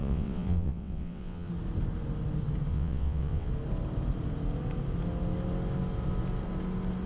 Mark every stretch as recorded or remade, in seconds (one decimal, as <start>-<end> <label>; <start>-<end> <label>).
0.0-1.5 remade; 1.5-2.7 recorded; 2.7-3.5 remade; 3.5-7.1 recorded